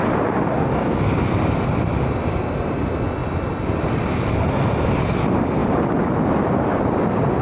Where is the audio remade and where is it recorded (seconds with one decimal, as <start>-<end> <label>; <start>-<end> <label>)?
0.0-0.5 recorded; 0.5-1.0 remade; 1.0-7.4 recorded